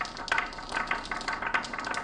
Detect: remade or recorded recorded